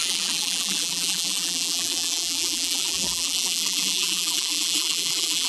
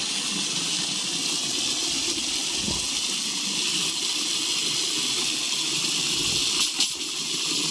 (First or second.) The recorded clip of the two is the second